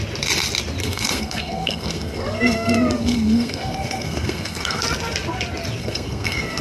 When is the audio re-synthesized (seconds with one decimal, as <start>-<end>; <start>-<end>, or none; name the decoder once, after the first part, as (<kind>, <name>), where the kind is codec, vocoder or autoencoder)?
0.8-4.8 (codec, SNAC); 5.8-6.6